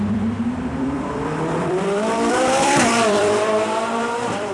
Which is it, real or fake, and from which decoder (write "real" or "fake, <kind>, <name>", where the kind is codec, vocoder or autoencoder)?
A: fake, vocoder, BigVGAN v2